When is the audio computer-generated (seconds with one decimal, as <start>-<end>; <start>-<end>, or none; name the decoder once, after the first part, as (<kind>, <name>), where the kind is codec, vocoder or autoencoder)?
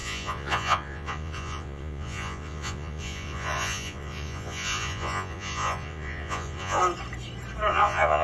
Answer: 0.0-6.8 (vocoder, Vocos); 7.7-8.2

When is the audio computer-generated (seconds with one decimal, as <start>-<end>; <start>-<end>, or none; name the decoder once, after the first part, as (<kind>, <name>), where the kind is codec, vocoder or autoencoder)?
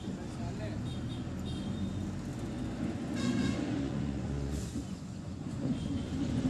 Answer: 2.3-6.5 (vocoder, Vocos)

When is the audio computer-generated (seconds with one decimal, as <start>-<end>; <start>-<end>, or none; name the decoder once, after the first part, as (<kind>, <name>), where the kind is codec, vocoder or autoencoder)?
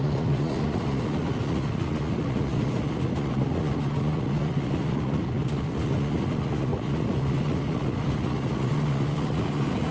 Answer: 0.0-9.9 (vocoder, Vocos)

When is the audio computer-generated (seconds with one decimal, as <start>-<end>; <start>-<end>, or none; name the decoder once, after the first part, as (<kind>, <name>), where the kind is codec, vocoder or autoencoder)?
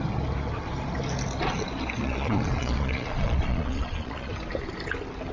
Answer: 2.0-4.3 (vocoder, Vocos)